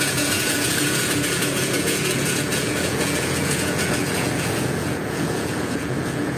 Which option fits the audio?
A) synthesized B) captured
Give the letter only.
A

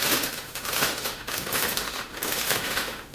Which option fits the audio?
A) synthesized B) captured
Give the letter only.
A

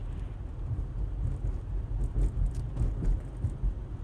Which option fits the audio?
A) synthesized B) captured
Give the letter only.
B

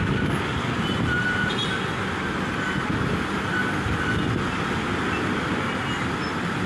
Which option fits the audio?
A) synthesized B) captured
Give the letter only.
B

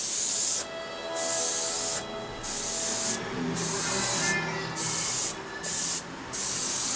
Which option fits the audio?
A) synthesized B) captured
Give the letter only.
B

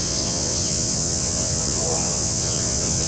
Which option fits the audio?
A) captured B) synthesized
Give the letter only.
B